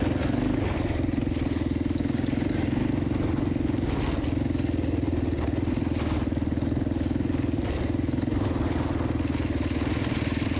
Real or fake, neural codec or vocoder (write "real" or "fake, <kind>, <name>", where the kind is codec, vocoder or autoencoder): real